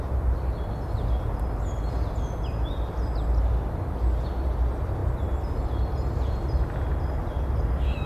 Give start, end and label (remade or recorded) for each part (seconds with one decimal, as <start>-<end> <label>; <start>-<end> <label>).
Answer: 0.0-8.1 recorded